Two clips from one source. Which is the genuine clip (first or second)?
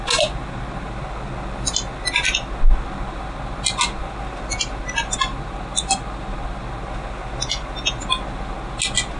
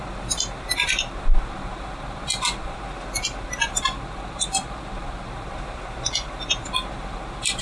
first